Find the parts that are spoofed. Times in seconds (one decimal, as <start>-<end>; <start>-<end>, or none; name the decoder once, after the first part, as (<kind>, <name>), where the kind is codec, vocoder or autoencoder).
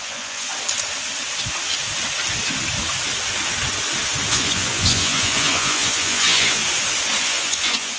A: 0.0-0.5 (vocoder, Vocos); 4.3-6.6; 7.2-8.0